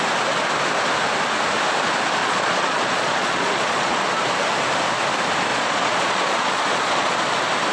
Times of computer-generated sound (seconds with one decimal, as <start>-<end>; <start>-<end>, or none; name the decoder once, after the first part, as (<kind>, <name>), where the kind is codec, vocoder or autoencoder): 2.2-4.0 (vocoder, Vocos); 5.5-7.2